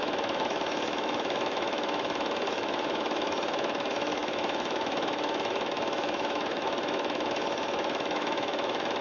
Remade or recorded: remade